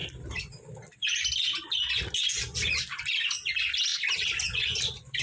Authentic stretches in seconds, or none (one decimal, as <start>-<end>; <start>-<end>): 0.0-5.2